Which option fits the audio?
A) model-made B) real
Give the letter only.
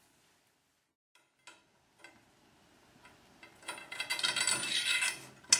B